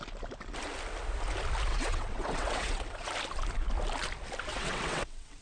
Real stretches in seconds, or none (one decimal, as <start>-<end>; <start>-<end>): 0.0-1.7; 3.1-4.5